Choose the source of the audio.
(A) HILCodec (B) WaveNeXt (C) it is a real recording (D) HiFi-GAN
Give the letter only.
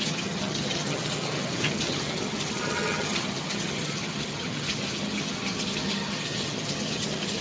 D